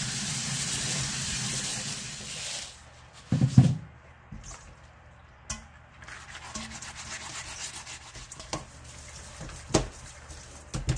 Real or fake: real